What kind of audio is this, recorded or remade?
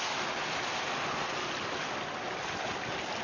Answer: recorded